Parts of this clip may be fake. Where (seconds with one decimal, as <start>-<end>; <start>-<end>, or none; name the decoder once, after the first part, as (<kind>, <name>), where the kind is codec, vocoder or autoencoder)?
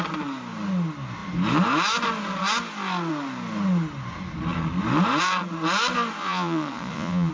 6.2-7.3 (vocoder, Vocos)